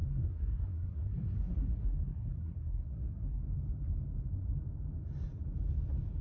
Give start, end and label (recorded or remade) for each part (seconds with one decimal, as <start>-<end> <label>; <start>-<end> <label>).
0.0-3.4 remade; 3.4-6.2 recorded